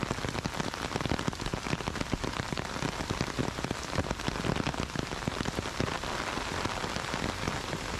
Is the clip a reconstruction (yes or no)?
no